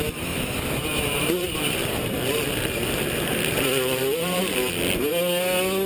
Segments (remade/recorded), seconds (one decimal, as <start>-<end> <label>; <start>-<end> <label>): 0.0-0.9 recorded; 0.9-4.4 remade; 4.4-5.9 recorded